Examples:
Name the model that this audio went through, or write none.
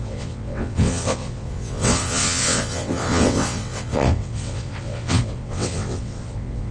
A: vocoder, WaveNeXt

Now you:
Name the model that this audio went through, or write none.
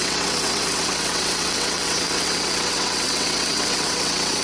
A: vocoder, WaveNeXt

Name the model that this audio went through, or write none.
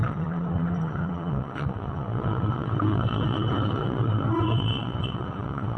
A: vocoder, WaveNeXt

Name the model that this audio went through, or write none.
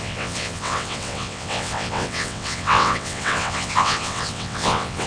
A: vocoder, WaveNeXt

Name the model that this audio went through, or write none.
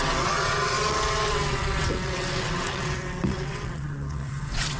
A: vocoder, WaveNeXt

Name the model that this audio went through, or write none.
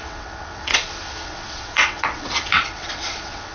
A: vocoder, WaveNeXt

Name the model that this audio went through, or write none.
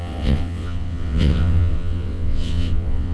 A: vocoder, WaveNeXt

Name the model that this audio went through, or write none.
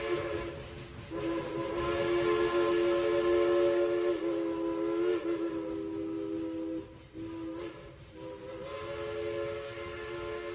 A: none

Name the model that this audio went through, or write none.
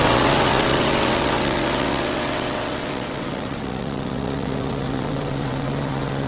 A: vocoder, WaveNeXt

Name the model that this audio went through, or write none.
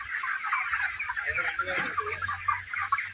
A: none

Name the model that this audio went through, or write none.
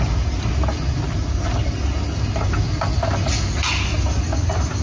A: none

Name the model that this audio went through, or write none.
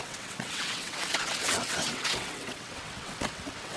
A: vocoder, WaveNeXt